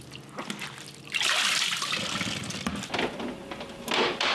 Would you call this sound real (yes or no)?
yes